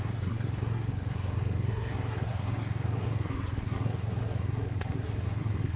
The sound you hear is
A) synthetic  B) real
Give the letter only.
A